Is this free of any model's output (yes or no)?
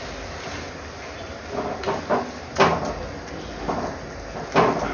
yes